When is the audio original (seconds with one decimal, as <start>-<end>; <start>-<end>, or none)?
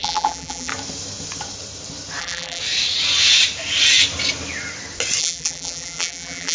0.7-2.2; 2.6-5.2